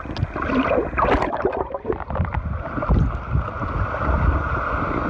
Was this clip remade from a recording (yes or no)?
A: no